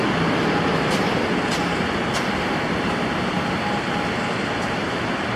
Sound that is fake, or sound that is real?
real